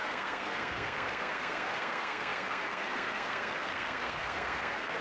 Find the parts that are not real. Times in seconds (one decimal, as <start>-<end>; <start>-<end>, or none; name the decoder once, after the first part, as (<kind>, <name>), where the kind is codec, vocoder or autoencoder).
0.0-5.0 (codec, SNAC)